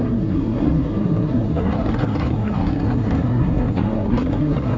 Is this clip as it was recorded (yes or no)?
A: no